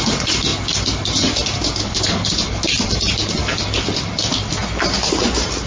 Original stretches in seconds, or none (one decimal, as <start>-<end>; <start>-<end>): 0.0-1.8; 2.3-5.7